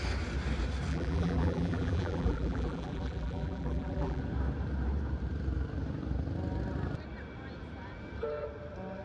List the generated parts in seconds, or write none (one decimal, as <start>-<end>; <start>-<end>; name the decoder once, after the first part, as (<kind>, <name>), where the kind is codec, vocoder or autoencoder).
0.9-4.2 (vocoder, BigVGAN v2)